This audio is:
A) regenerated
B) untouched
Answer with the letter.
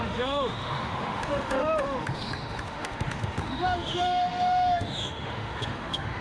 A